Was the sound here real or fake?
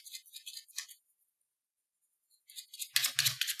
real